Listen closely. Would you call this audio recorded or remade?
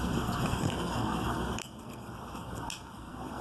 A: remade